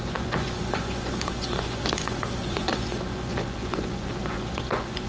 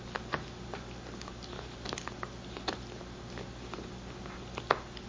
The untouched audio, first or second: second